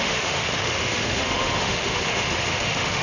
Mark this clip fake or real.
fake